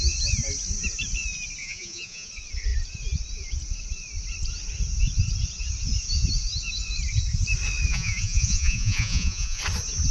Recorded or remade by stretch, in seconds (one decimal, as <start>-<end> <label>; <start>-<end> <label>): 0.0-1.6 recorded; 1.6-2.3 remade; 2.3-7.9 recorded; 7.9-9.6 remade; 9.6-10.1 recorded